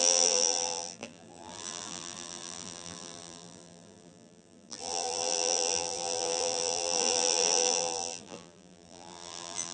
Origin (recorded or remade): remade